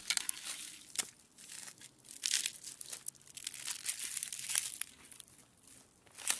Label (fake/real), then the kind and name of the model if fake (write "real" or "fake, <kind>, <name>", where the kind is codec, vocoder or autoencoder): real